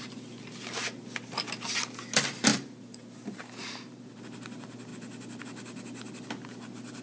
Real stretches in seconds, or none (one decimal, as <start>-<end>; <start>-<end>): 0.0-2.5; 4.2-7.0